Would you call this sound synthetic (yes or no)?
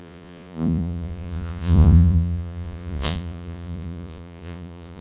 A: yes